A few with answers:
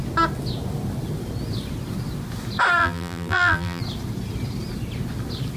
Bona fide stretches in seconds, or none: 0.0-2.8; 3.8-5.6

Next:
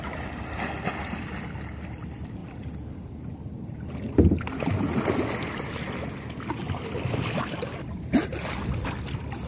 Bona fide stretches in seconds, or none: 0.0-9.5

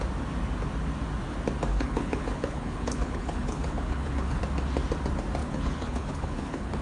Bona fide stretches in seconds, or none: 0.0-1.7; 4.4-5.4

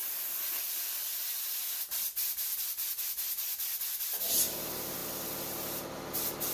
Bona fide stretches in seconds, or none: 0.0-6.5